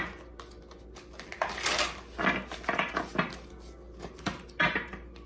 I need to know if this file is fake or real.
real